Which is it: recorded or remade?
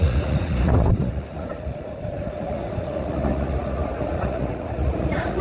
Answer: remade